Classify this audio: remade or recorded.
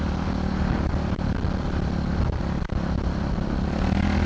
recorded